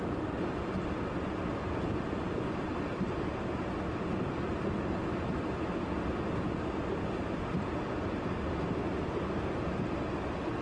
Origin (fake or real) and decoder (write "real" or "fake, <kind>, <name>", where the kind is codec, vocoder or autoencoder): real